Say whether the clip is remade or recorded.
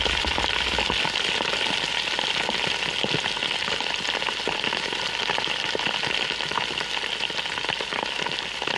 recorded